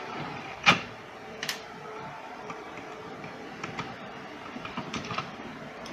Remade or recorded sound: remade